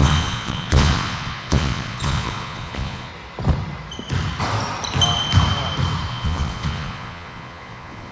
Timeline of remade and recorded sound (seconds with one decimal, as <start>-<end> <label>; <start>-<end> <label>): 0.0-3.1 remade; 3.1-6.1 recorded; 6.1-8.1 remade